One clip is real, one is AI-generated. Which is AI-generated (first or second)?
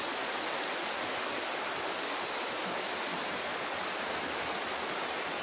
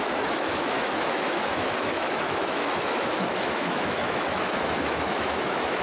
second